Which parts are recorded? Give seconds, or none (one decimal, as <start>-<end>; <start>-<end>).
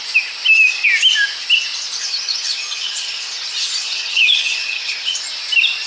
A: 0.0-2.0; 5.2-5.9